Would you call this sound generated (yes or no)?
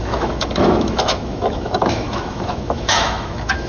yes